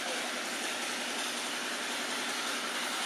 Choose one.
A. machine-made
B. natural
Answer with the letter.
B